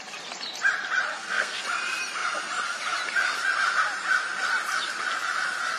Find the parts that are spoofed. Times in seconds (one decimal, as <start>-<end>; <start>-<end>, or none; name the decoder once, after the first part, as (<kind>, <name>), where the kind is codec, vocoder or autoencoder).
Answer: 1.1-1.6 (codec, SNAC)